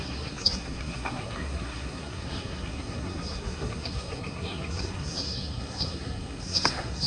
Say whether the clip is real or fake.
fake